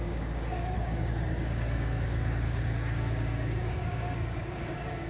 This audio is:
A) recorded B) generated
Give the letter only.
B